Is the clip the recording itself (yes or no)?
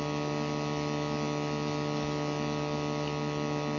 yes